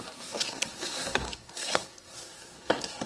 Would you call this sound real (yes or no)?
no